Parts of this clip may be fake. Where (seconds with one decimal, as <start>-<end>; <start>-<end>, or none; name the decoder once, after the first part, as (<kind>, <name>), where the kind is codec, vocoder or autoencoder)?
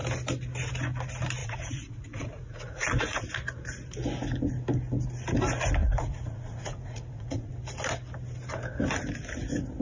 1.4-3.3 (vocoder, Vocos); 5.8-7.5